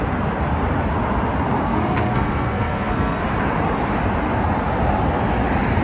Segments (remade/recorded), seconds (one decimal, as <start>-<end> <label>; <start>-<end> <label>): 0.0-1.6 recorded; 1.6-3.2 remade; 3.2-5.8 recorded